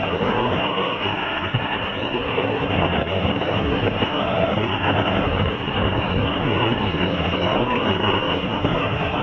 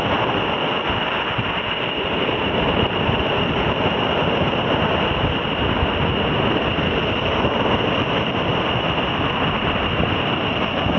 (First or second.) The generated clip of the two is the first